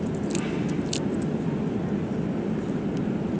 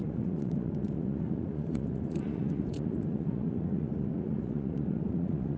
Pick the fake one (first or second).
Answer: second